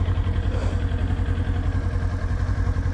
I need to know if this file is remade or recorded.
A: recorded